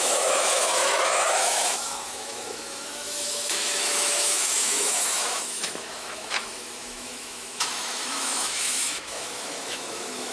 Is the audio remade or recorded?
remade